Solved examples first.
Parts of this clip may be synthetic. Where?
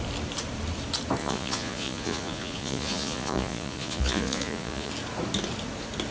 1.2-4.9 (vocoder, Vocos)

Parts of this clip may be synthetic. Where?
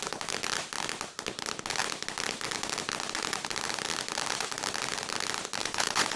5.6-6.2 (vocoder, Vocos)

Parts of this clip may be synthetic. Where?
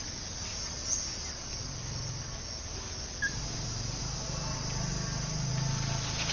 none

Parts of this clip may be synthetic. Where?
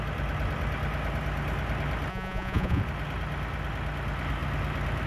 2.1-2.8 (vocoder, Vocos)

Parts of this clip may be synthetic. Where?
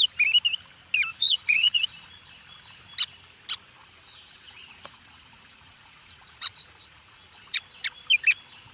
1.1-2.1 (vocoder, Vocos); 3.8-7.6